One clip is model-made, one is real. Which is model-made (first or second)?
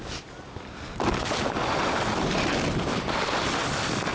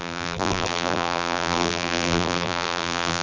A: second